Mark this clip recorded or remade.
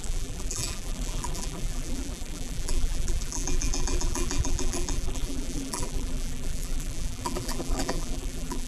remade